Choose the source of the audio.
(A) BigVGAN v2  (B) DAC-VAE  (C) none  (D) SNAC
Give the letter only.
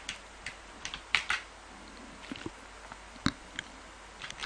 C